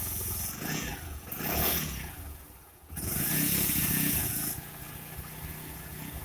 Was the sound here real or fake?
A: fake